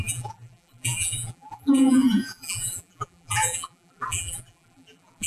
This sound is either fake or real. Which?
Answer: fake